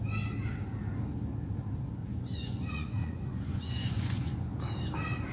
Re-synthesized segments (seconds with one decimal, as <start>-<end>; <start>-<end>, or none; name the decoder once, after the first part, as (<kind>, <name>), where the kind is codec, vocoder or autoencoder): 2.0-4.5 (vocoder, Vocos)